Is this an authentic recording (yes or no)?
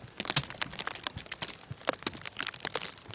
yes